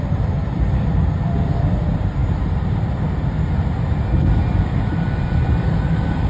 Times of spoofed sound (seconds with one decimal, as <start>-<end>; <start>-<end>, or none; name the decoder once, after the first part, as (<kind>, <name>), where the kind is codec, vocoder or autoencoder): 0.0-2.2 (vocoder, BigVGAN v2); 4.6-6.3